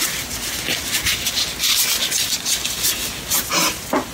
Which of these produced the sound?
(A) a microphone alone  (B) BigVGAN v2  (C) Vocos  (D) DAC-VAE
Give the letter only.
A